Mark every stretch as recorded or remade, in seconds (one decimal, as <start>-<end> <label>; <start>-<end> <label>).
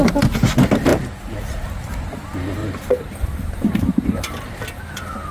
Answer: 0.0-2.6 recorded; 2.6-4.4 remade; 4.4-5.3 recorded